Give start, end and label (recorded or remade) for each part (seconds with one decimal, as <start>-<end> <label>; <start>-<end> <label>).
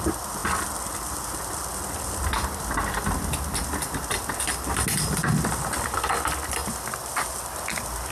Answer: 0.0-8.1 recorded